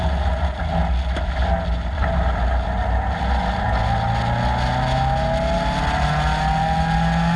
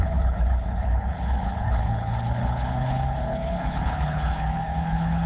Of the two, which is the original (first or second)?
first